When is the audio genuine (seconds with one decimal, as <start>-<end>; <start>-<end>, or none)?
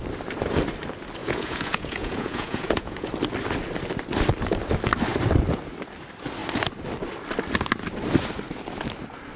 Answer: 0.0-1.2; 3.1-9.4